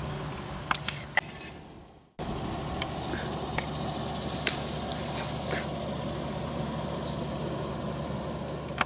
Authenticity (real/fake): real